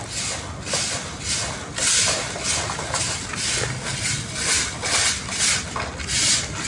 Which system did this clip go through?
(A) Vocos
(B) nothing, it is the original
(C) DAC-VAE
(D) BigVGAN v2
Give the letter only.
B